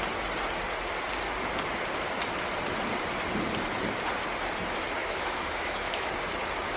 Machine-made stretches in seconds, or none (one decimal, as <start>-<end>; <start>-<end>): 5.0-6.1